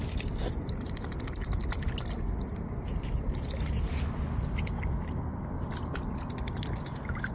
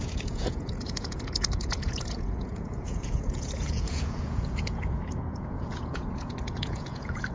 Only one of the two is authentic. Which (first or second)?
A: first